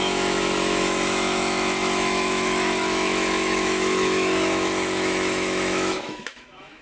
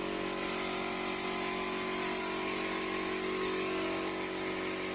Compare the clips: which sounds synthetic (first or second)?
first